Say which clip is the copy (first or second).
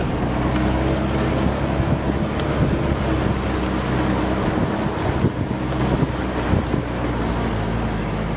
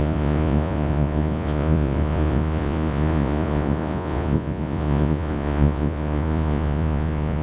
second